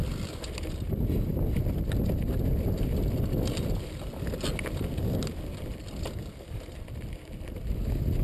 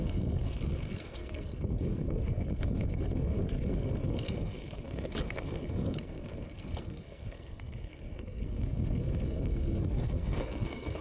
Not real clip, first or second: second